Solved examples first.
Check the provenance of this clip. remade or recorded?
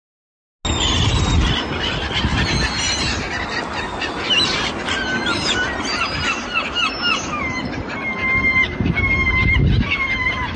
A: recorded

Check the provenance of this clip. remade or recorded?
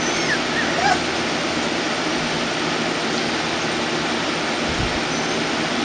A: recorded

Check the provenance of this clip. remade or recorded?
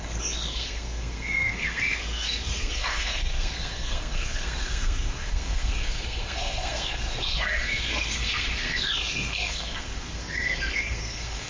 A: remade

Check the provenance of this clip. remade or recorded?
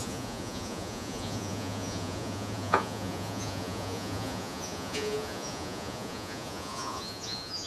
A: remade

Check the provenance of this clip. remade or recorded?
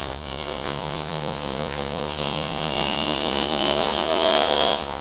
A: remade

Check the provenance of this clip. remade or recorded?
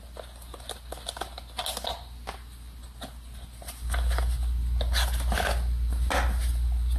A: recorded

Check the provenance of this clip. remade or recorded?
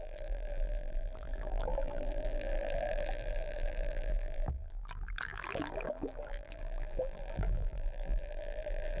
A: remade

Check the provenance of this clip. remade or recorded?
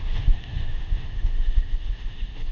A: remade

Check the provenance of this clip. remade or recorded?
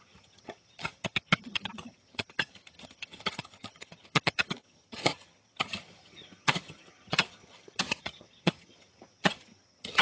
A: remade